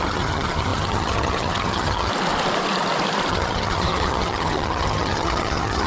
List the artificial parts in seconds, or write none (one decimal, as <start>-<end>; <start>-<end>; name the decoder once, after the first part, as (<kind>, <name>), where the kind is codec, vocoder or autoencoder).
0.0-2.1 (vocoder, HiFi-GAN); 3.3-5.9